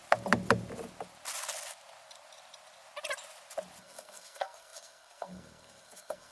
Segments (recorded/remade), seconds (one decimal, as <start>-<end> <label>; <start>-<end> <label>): 0.0-3.8 recorded; 3.8-6.3 remade